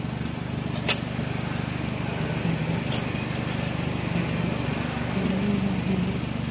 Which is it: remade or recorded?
recorded